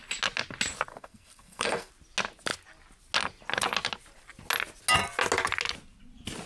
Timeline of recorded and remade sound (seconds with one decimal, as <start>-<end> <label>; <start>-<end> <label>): 0.0-0.9 recorded; 0.9-1.9 remade; 1.9-6.5 recorded